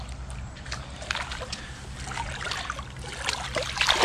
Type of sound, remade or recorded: recorded